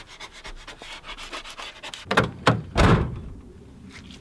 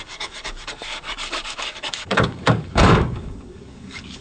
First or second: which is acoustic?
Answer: first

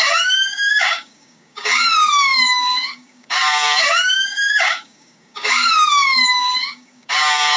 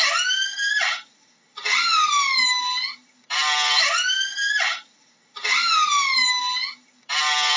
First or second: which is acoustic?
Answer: second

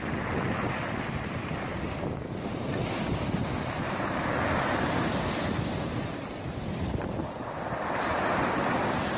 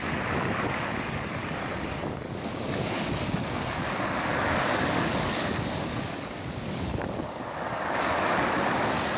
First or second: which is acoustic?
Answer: first